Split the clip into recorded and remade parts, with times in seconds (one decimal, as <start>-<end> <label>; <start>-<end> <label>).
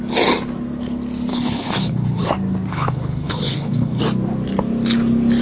0.0-1.3 recorded; 1.3-2.3 remade; 2.3-2.7 recorded; 2.7-4.0 remade; 4.0-5.4 recorded